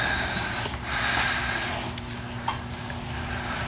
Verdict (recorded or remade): recorded